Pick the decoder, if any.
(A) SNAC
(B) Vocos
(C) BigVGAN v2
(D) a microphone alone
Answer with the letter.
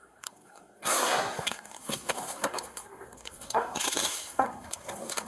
A